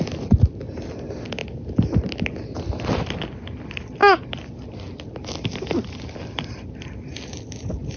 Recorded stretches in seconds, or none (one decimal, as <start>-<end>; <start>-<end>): 0.0-8.0